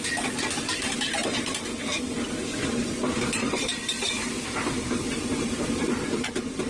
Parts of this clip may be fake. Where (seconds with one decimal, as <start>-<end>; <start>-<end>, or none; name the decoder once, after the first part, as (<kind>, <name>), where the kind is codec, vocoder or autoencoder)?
1.2-2.1 (vocoder, BigVGAN v2); 2.5-6.3

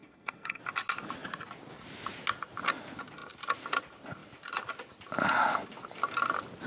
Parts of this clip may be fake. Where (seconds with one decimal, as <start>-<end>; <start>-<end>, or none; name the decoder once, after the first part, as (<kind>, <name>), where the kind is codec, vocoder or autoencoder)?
0.0-0.6 (codec, SNAC)

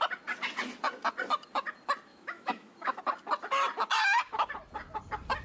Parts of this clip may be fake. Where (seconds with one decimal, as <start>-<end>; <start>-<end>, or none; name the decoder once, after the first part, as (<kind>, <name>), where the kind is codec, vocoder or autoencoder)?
2.1-3.0 (autoencoder, DAC-VAE)